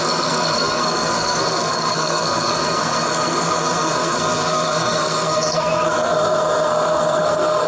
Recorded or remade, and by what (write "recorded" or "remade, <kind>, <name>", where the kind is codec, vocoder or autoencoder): remade, codec, SNAC